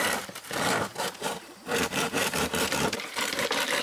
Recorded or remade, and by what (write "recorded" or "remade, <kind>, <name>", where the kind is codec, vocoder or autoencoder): remade, vocoder, BigVGAN v2